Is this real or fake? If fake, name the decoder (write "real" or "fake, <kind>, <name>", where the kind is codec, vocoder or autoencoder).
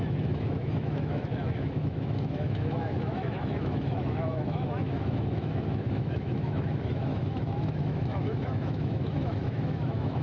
fake, autoencoder, DAC-VAE